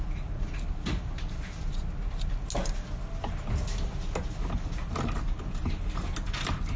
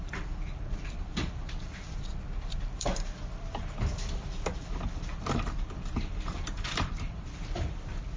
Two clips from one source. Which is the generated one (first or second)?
second